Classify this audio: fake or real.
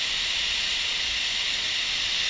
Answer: real